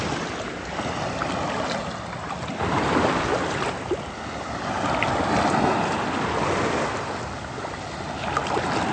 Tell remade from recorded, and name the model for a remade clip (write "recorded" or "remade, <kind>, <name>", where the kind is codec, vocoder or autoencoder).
recorded